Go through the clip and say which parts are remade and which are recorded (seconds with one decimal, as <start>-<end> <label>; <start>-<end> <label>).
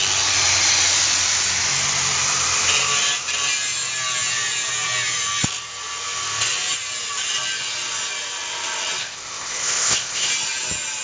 0.0-9.0 recorded; 9.0-10.3 remade; 10.3-11.0 recorded